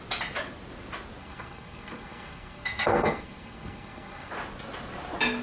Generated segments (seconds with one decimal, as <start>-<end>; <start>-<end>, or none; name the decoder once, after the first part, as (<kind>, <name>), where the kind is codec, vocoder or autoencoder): 1.2-4.3 (codec, SNAC)